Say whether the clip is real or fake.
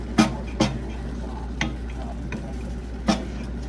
real